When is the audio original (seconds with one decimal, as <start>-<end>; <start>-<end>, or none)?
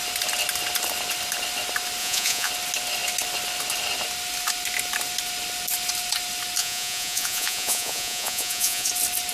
0.0-2.0; 2.5-6.6; 8.9-9.3